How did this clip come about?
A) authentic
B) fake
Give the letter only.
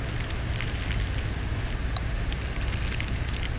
A